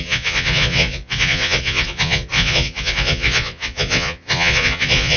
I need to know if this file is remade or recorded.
remade